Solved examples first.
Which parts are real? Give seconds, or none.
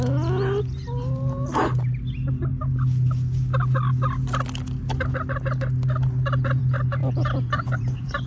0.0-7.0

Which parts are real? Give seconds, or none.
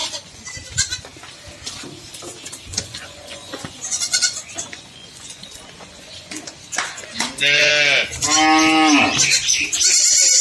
0.5-2.7; 7.7-10.4